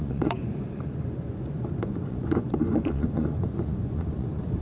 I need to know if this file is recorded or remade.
remade